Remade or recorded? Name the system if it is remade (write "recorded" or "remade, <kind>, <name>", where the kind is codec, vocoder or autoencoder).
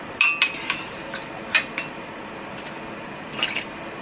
recorded